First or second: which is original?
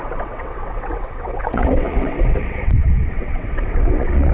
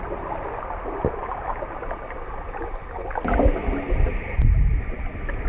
second